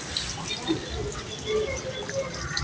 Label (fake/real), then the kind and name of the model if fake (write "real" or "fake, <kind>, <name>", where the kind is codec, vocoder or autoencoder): real